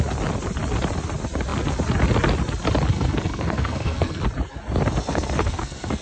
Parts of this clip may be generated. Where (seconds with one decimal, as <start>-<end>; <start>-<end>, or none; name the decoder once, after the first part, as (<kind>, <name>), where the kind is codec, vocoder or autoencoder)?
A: 2.9-4.2 (codec, SNAC); 5.1-6.0